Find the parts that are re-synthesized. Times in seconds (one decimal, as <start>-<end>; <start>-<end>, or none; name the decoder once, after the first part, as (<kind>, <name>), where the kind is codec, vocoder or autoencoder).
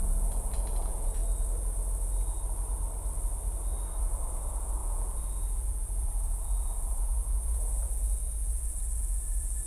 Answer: 0.0-1.2 (vocoder, Vocos); 4.0-9.7